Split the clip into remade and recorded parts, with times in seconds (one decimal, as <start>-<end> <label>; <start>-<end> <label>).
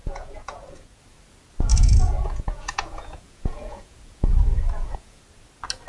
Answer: 0.0-1.0 remade; 1.0-1.7 recorded; 1.7-5.2 remade; 5.2-5.9 recorded